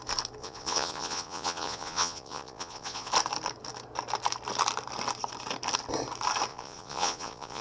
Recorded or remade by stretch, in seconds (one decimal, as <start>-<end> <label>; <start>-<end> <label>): 0.0-0.4 recorded; 0.4-3.1 remade; 3.1-6.5 recorded; 6.5-7.6 remade